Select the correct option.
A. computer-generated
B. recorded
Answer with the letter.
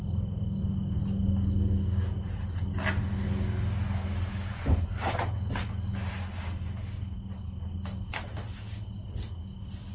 B